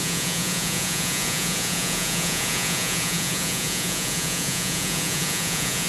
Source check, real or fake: fake